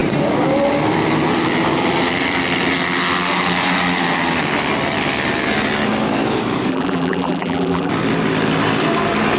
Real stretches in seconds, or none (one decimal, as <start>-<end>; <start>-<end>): 0.0-6.7; 7.9-9.4